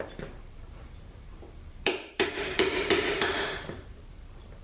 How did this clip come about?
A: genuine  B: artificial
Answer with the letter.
B